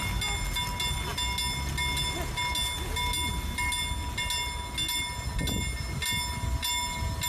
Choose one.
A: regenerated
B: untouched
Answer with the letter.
B